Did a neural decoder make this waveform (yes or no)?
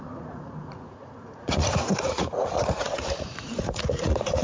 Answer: yes